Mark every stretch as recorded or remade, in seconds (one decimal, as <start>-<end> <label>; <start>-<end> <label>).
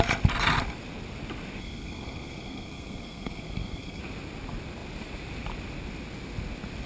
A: 0.0-1.6 recorded; 1.6-4.0 remade; 4.0-6.9 recorded